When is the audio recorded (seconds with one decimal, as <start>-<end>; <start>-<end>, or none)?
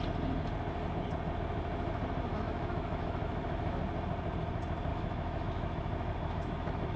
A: 0.0-2.3; 3.8-4.9